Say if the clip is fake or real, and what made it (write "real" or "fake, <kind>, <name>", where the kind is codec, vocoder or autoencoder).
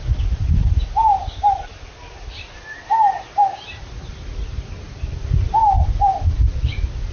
real